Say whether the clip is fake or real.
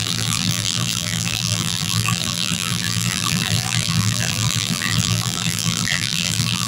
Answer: fake